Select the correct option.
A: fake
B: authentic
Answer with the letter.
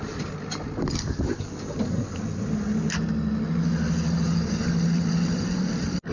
B